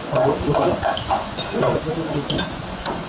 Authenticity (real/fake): fake